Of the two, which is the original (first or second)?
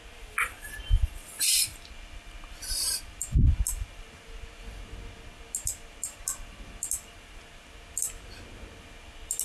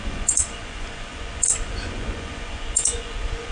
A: first